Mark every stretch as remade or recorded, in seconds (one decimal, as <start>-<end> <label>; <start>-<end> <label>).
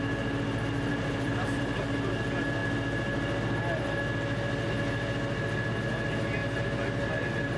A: 0.0-0.9 recorded; 0.9-1.6 remade; 1.6-7.6 recorded